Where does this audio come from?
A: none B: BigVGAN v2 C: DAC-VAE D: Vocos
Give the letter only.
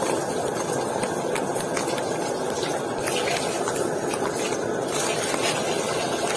A